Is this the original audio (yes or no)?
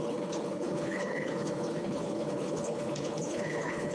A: no